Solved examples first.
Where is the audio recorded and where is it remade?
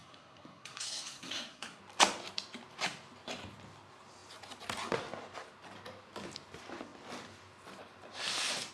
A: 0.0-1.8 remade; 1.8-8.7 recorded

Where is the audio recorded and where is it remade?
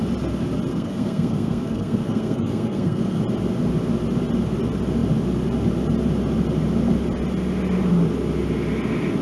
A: 0.0-0.7 recorded; 0.7-3.2 remade; 3.2-9.2 recorded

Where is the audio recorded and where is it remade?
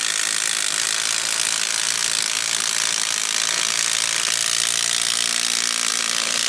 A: 0.0-6.5 recorded